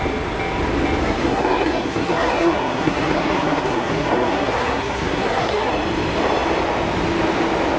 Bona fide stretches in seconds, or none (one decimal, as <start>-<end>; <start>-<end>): 0.0-1.0; 5.7-7.8